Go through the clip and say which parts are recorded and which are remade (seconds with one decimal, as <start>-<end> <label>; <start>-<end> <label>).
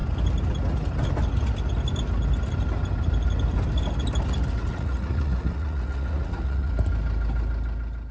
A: 0.0-4.7 recorded; 4.7-6.7 remade; 6.7-8.1 recorded